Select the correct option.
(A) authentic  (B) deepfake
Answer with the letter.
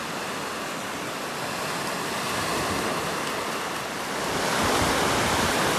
A